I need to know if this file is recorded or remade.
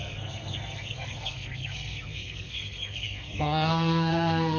remade